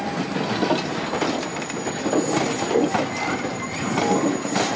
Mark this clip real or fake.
real